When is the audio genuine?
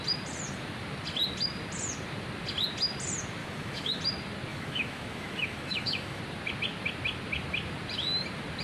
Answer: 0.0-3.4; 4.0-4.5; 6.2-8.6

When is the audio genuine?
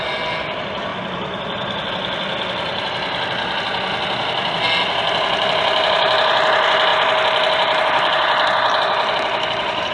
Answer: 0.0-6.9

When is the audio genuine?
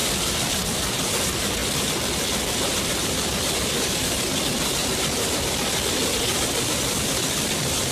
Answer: 4.8-6.9